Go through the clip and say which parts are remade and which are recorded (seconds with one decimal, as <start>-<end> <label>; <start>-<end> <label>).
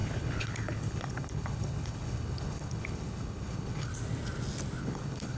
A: 0.0-3.9 remade; 3.9-4.8 recorded; 4.8-5.4 remade